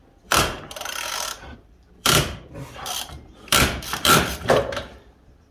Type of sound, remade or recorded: remade